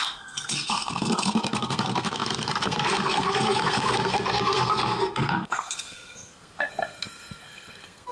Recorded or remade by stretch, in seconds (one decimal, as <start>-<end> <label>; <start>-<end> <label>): 0.0-8.1 remade